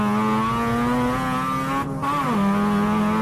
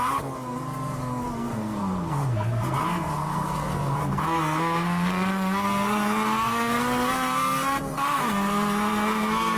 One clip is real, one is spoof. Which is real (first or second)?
first